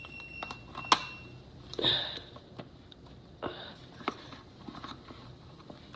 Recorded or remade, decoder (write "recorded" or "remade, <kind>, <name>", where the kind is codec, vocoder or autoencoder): recorded